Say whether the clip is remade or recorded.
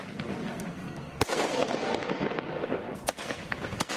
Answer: remade